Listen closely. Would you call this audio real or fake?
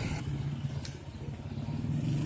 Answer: real